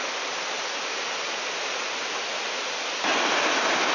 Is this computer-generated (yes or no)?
no